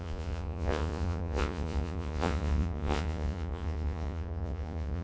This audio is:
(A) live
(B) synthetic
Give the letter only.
B